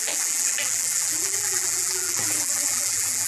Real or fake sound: fake